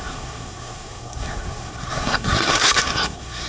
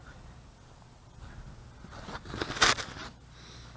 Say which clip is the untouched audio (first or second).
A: second